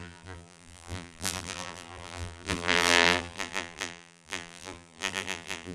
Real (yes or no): no